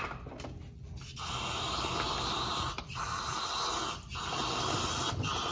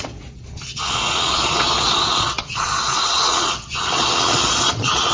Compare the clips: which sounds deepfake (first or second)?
second